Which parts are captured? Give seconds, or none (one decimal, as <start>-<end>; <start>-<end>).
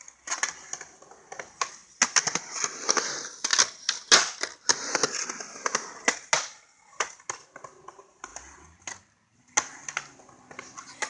0.0-11.1